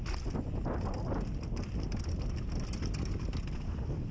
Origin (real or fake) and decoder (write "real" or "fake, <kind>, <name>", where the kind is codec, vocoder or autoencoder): real